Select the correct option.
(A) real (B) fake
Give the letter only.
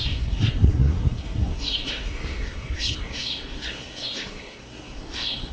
B